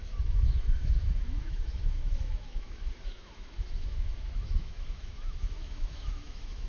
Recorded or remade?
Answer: remade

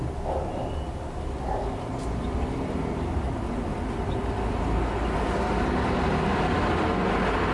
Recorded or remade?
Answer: recorded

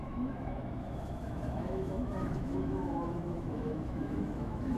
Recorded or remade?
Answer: remade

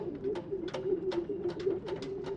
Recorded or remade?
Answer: recorded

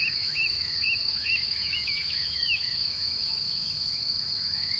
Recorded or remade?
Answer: remade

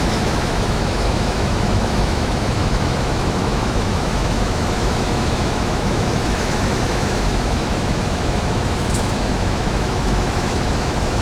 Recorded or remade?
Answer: remade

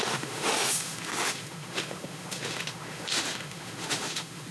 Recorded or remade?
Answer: remade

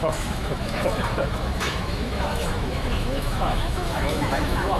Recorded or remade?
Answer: remade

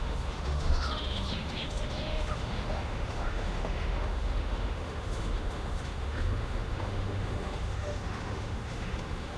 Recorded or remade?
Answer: remade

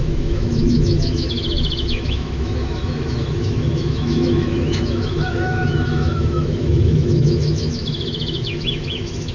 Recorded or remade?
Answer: remade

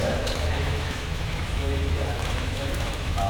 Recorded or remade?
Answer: remade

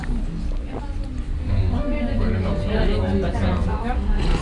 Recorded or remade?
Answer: recorded